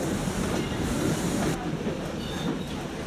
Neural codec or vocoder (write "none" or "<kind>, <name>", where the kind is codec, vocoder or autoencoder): none